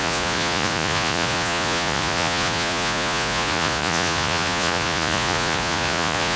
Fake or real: fake